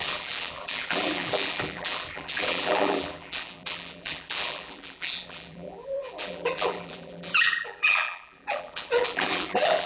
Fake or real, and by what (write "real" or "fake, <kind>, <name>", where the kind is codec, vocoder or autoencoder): fake, vocoder, BigVGAN v2